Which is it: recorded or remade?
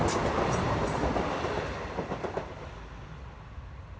recorded